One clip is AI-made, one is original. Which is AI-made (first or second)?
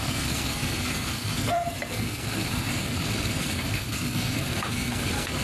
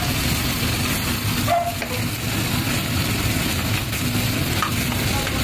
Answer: first